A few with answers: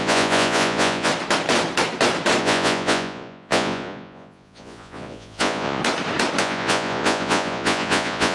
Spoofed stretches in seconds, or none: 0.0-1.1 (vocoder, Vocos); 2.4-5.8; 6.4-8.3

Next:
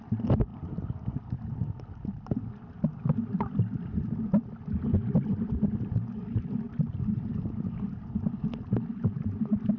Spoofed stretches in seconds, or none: none

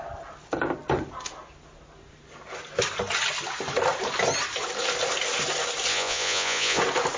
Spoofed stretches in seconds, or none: 5.9-6.8 (vocoder, Vocos)

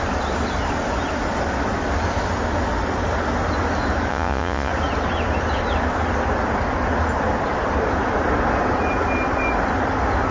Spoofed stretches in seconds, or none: 4.1-4.7 (vocoder, Vocos)

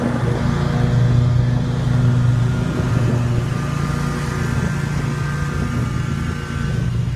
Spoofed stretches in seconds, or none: 2.3-3.1 (vocoder, Vocos)